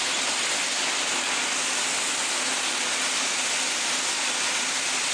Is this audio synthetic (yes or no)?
no